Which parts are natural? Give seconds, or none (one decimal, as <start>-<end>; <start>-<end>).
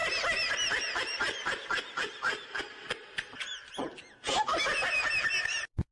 2.6-4.5; 5.3-5.9